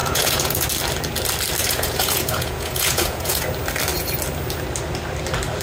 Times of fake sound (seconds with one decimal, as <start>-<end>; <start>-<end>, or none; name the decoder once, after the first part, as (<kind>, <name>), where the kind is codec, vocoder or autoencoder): 0.0-0.7 (vocoder, Vocos); 1.6-3.4